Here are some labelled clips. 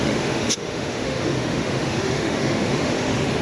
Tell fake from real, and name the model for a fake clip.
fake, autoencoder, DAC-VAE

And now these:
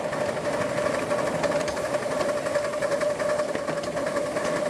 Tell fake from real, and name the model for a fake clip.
real